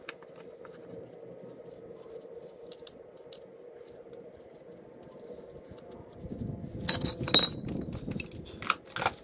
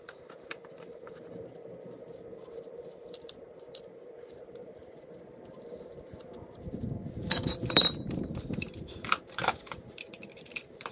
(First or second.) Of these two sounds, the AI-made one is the second